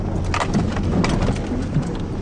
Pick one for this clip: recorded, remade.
recorded